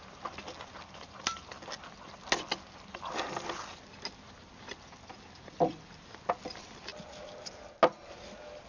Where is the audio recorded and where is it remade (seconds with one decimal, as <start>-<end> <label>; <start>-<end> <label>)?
0.0-8.7 recorded